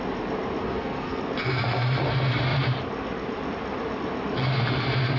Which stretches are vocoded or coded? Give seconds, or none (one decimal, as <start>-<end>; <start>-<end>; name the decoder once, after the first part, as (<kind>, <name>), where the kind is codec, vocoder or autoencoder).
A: 0.6-1.2 (codec, SNAC)